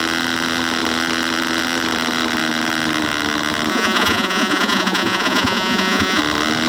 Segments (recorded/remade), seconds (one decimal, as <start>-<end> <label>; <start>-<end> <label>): 0.0-3.7 recorded; 3.7-6.2 remade; 6.2-6.7 recorded